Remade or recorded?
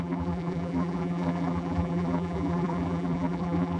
remade